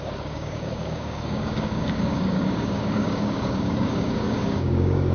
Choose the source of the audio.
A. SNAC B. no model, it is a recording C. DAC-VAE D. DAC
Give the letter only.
D